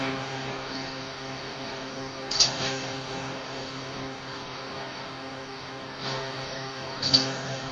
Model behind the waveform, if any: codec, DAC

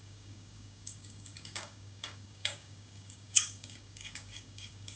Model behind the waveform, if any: codec, DAC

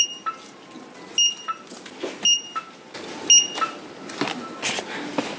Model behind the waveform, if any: none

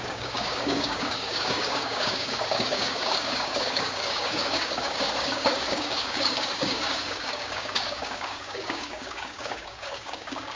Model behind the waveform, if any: codec, DAC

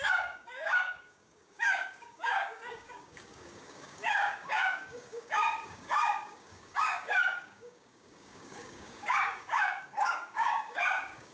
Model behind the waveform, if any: codec, DAC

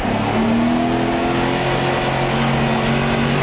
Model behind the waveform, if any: none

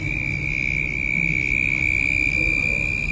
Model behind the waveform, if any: none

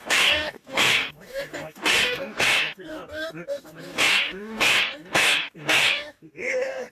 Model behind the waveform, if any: codec, DAC